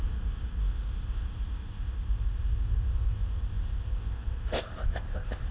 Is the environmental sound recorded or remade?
remade